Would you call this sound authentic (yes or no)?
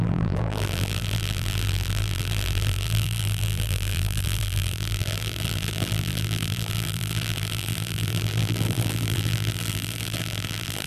no